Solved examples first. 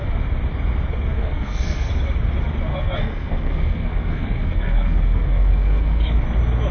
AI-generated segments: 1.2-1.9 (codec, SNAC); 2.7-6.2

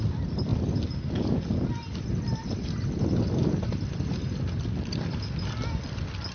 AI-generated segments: none